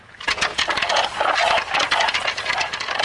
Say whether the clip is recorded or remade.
recorded